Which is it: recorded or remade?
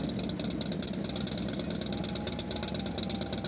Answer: recorded